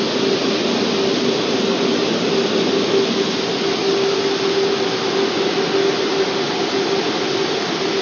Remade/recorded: recorded